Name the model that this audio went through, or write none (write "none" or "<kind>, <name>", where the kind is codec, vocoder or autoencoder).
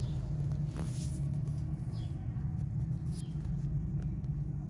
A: none